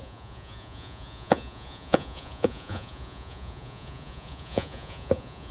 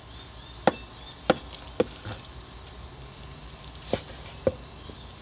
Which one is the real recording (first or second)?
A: second